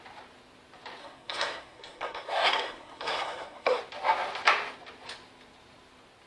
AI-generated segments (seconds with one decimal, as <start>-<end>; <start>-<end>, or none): 1.0-3.8